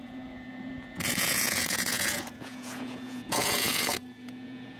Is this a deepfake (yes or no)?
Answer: yes